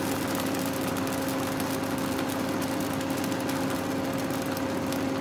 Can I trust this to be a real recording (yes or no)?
yes